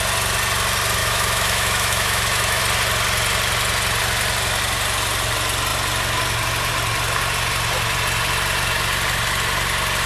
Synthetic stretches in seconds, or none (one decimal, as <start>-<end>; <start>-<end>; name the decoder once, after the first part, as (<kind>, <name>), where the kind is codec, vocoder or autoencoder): 1.0-2.6 (autoencoder, DAC-VAE)